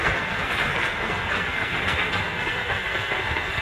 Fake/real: fake